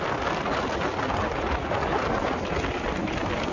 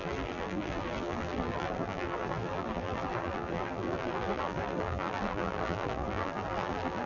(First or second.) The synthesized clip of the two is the second